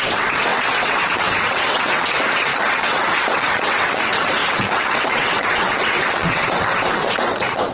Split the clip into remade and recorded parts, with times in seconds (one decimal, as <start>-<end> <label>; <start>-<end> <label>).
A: 0.0-7.7 remade